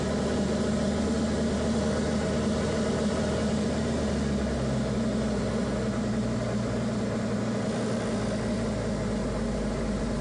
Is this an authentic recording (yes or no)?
yes